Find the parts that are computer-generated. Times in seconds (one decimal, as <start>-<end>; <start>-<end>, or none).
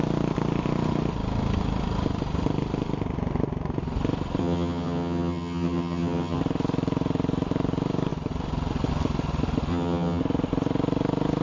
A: 4.4-6.4; 9.7-10.2